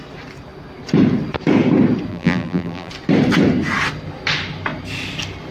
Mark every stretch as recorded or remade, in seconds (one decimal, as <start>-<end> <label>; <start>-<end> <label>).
0.0-2.1 recorded; 2.1-2.9 remade; 2.9-5.5 recorded